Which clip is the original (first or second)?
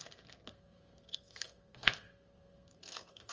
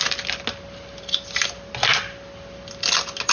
second